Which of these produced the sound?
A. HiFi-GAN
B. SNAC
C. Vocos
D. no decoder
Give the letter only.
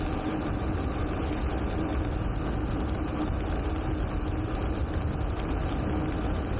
D